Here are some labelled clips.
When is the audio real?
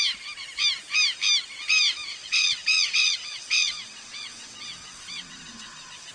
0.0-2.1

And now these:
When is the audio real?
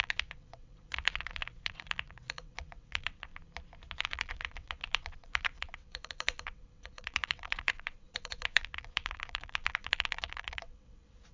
3.3-4.0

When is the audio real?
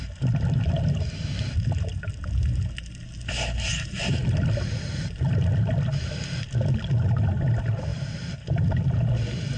0.0-9.6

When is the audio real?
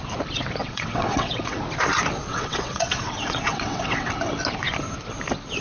0.0-0.6; 1.6-2.3; 4.1-5.6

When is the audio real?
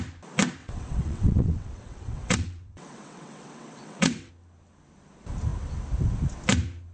0.0-0.6; 4.3-6.9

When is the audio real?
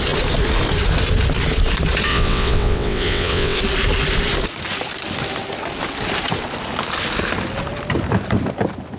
0.0-2.1; 3.6-9.0